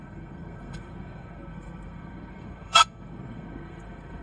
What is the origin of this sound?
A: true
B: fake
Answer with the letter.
B